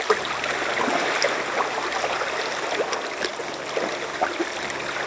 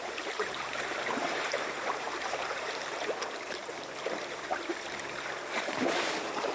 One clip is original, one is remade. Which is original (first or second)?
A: first